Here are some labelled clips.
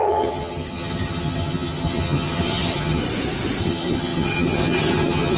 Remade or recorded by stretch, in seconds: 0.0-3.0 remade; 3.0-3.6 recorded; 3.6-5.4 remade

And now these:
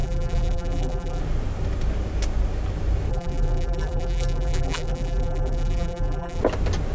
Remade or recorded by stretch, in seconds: 0.0-1.2 remade; 1.2-3.1 recorded; 3.1-6.4 remade; 6.4-6.9 recorded

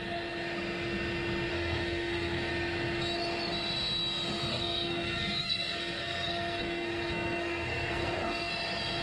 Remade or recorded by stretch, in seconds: 0.0-1.5 recorded; 1.5-2.5 remade; 2.5-4.5 recorded; 4.5-8.5 remade; 8.5-9.0 recorded

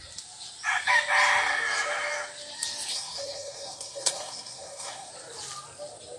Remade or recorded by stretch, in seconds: 0.0-2.9 recorded; 2.9-5.1 remade; 5.1-6.2 recorded

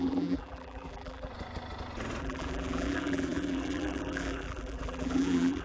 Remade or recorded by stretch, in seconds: 0.0-1.3 remade; 1.3-2.2 recorded; 2.2-5.6 remade

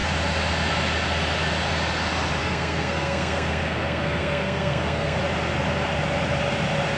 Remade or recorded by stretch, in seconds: 0.0-2.4 recorded; 2.4-5.2 remade; 5.2-7.0 recorded

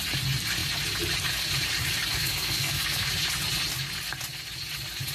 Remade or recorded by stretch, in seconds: 0.0-2.2 recorded; 2.2-3.1 remade; 3.1-5.1 recorded